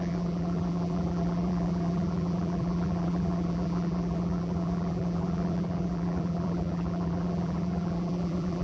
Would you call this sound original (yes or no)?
no